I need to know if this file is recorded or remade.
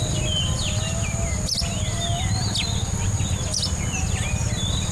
recorded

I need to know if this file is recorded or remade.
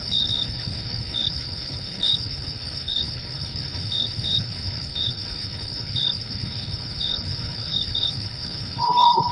remade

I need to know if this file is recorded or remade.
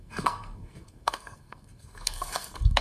remade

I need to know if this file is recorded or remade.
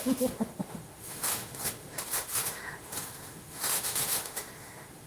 remade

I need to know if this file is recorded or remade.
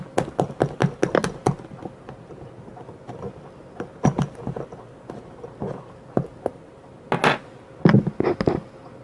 recorded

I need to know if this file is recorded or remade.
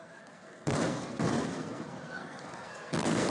remade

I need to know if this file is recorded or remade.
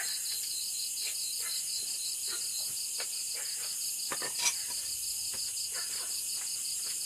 recorded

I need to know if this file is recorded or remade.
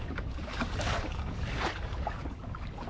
remade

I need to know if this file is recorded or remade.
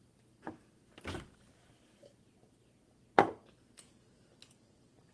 recorded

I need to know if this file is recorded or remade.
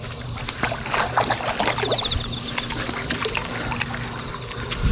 recorded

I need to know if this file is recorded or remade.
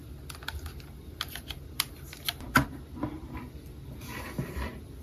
recorded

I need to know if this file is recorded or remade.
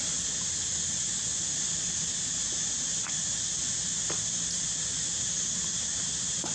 recorded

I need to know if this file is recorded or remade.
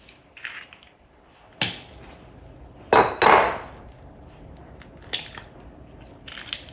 recorded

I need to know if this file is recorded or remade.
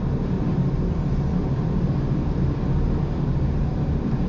remade